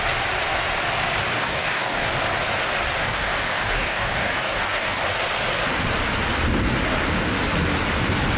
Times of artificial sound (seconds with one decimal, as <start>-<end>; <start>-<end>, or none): 1.3-2.1; 3.0-5.0